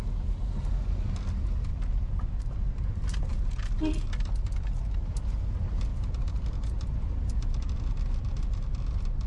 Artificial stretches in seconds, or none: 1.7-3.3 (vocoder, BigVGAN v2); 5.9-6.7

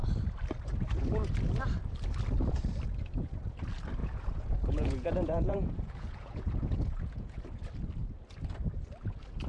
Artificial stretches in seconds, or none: 4.0-7.4 (vocoder, Vocos)

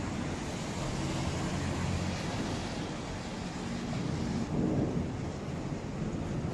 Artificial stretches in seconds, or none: none

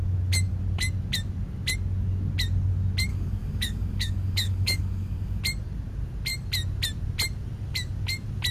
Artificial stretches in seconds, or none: 3.1-5.4 (codec, DAC)

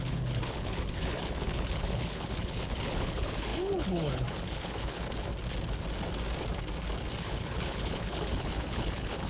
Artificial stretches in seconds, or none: 0.0-5.3 (codec, HILCodec); 7.2-9.3

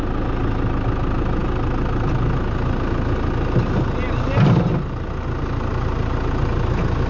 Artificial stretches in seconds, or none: none

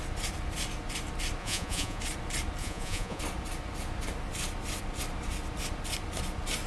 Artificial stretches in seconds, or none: 1.4-2.0 (vocoder, Vocos); 2.6-3.2

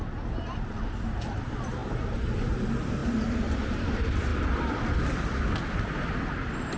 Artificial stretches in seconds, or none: 0.0-4.3 (vocoder, BigVGAN v2); 5.8-6.8